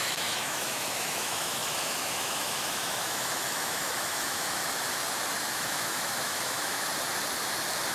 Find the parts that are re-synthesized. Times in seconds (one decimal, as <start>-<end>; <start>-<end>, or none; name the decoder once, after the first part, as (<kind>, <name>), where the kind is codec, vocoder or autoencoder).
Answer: 0.0-4.6 (autoencoder, DAC-VAE); 5.5-6.9